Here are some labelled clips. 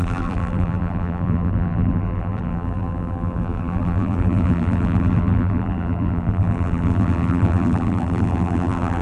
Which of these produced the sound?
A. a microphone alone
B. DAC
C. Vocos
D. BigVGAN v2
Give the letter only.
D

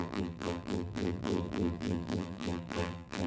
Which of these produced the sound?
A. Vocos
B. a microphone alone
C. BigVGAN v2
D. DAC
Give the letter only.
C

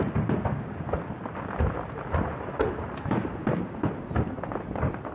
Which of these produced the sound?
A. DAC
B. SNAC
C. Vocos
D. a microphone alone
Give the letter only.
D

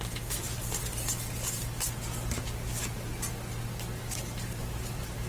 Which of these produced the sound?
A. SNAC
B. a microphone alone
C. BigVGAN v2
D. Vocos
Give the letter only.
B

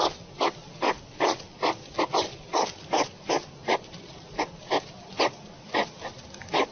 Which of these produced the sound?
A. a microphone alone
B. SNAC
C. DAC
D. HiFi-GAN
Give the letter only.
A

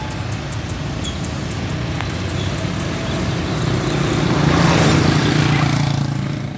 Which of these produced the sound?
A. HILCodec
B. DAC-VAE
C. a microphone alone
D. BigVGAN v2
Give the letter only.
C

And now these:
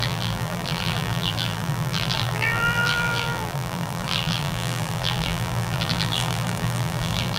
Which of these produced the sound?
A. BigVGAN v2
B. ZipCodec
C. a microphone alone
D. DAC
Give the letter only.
A